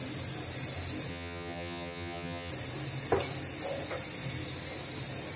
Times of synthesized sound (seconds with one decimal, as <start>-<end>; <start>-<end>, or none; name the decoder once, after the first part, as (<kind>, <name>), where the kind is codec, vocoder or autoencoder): 1.1-2.5 (vocoder, HiFi-GAN)

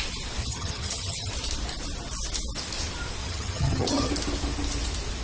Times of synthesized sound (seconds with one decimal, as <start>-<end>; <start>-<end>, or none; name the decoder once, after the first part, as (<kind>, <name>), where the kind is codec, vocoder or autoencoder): 0.4-1.3 (vocoder, HiFi-GAN); 3.2-4.1

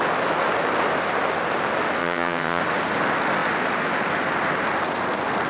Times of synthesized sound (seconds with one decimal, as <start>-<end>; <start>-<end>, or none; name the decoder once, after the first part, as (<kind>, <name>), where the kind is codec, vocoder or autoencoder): 2.0-2.6 (vocoder, HiFi-GAN)